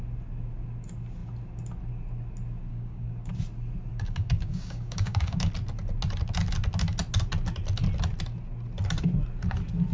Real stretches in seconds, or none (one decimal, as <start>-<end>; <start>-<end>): 0.0-2.7; 3.3-3.9; 5.5-9.9